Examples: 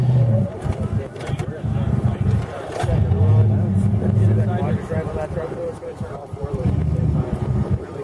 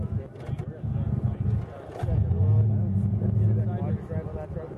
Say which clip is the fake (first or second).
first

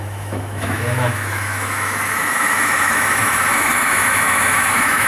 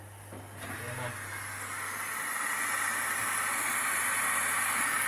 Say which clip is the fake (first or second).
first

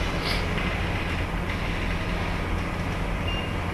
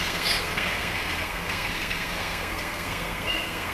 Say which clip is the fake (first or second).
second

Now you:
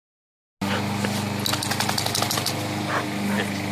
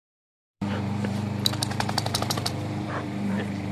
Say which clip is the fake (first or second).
second